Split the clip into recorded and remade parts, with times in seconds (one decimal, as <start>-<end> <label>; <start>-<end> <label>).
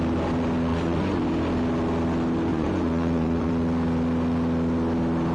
0.0-0.7 recorded; 0.7-1.2 remade; 1.2-2.5 recorded; 2.5-3.5 remade; 3.5-5.3 recorded